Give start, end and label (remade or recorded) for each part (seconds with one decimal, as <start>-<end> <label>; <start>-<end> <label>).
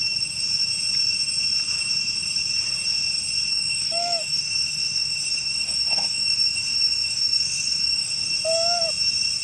0.0-3.5 recorded; 3.5-8.3 remade; 8.3-9.4 recorded